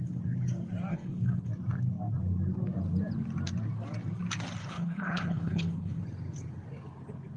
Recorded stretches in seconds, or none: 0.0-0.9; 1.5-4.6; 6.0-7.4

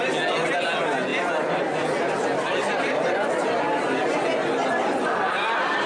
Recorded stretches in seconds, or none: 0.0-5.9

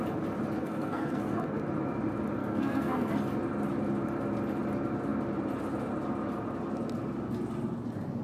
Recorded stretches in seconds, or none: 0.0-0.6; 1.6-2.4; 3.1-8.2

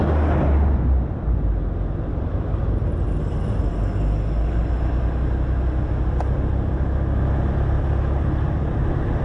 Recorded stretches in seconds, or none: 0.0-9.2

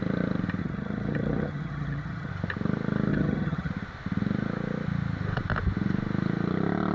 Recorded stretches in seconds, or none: 0.0-0.6; 2.3-3.1; 3.7-6.9

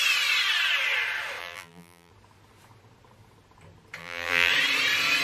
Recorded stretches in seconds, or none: 0.0-1.4; 2.1-4.0; 4.5-5.2

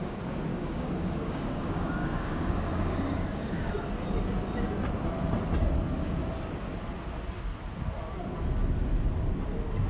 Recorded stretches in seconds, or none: 0.0-0.5; 3.7-9.9

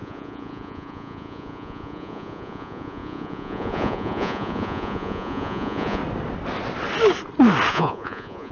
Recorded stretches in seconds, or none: 6.0-7.7